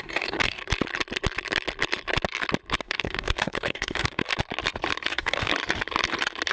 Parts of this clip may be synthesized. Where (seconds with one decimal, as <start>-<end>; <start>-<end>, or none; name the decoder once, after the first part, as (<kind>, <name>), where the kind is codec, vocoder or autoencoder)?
0.0-0.6 (codec, DAC); 2.8-4.2; 5.1-5.5